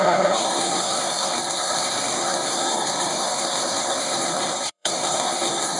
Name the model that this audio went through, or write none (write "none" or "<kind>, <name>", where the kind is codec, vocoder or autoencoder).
codec, SNAC